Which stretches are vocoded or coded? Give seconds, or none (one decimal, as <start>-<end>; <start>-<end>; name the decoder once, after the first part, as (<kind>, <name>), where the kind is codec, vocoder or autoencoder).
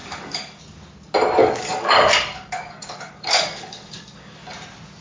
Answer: 0.0-0.6 (codec, DAC); 1.4-4.4